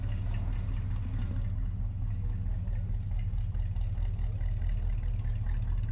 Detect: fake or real real